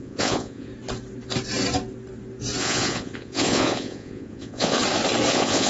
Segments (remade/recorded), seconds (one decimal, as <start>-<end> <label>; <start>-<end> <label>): 0.0-0.7 remade; 0.7-2.6 recorded; 2.6-4.8 remade; 4.8-5.3 recorded; 5.3-5.7 remade